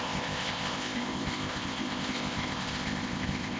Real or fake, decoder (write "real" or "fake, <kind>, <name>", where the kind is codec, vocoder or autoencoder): fake, codec, ZipCodec